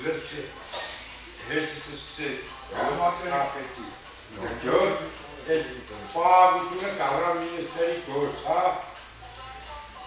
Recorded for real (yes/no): yes